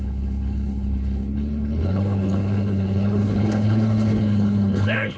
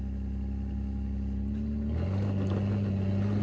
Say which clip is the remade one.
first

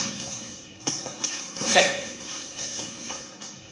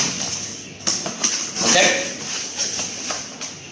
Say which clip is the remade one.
first